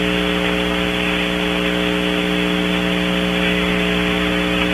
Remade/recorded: recorded